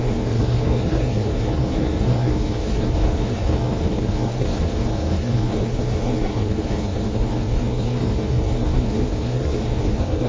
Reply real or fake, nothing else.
fake